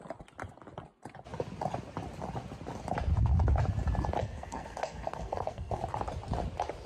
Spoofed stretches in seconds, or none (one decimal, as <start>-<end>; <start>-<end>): 4.2-5.8